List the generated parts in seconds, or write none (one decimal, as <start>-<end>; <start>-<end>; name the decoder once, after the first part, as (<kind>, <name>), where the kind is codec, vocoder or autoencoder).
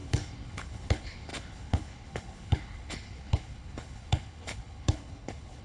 0.0-5.6 (codec, HILCodec)